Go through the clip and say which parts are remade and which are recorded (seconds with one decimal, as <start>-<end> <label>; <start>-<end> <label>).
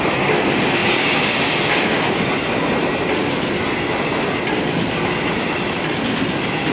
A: 0.0-6.7 recorded